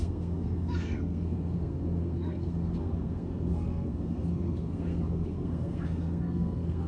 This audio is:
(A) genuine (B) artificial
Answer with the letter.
B